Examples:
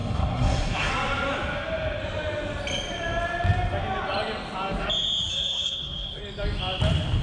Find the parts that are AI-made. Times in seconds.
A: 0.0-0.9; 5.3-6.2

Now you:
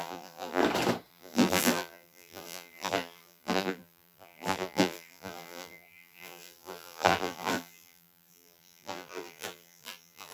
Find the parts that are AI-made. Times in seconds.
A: 0.0-0.6; 1.1-10.3

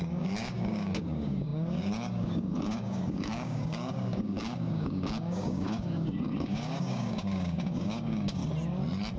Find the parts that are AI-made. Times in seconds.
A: 0.0-8.4